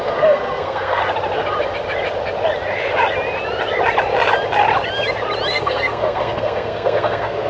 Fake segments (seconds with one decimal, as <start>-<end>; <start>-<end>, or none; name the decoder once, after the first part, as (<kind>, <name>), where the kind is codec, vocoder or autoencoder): 0.0-1.0 (codec, SNAC); 5.5-7.5